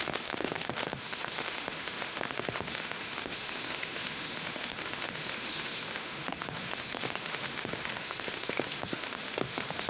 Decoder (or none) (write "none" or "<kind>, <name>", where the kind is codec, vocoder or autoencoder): autoencoder, DAC-VAE